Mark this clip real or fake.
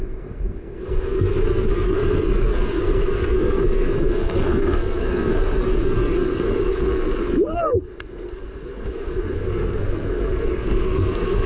fake